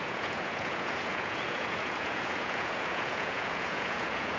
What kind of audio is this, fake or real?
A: fake